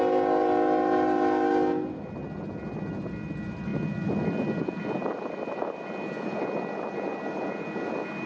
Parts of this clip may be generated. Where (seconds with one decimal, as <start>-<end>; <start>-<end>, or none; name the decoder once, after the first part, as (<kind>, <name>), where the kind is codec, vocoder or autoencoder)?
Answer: none